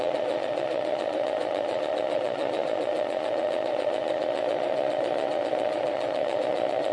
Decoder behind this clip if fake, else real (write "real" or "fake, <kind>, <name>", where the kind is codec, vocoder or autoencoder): fake, vocoder, Vocos